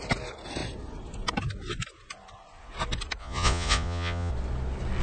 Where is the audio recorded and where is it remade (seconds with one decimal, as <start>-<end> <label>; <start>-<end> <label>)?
0.0-3.2 recorded; 3.2-4.3 remade; 4.3-5.0 recorded